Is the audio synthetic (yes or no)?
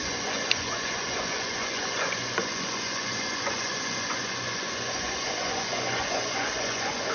yes